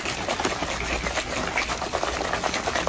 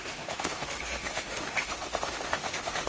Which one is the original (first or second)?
first